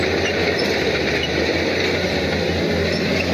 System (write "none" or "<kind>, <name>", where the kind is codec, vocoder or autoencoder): none